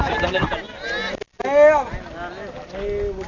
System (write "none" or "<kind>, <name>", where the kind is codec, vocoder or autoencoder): none